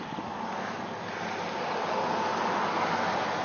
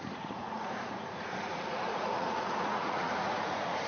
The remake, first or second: second